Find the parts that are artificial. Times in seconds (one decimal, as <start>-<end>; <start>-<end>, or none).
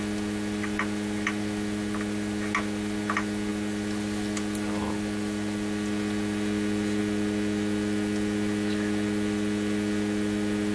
none